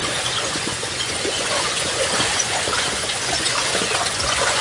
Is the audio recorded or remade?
remade